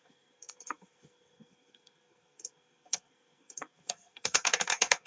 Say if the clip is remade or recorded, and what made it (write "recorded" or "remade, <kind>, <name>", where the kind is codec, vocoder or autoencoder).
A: remade, codec, SNAC